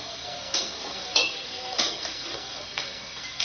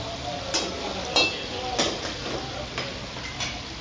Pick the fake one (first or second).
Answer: first